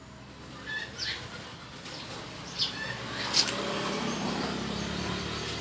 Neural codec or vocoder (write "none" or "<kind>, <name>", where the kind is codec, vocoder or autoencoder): none